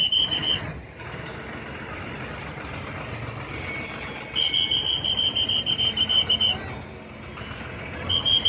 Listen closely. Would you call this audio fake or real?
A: real